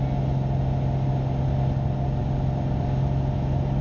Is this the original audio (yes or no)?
yes